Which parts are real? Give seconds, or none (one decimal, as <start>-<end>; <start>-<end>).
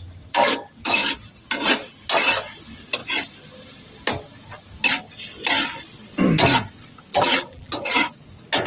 0.0-7.1; 7.7-8.7